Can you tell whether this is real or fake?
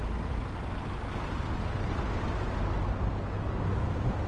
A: real